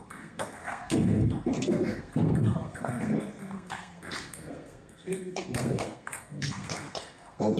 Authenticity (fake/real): fake